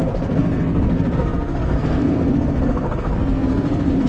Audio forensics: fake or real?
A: fake